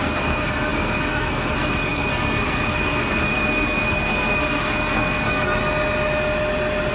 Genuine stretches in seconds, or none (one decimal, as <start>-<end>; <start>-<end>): 5.6-6.9